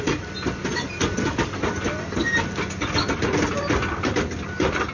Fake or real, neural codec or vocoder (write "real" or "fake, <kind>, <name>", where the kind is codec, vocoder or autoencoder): real